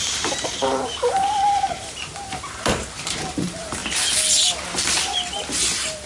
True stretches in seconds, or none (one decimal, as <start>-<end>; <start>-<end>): 3.8-6.1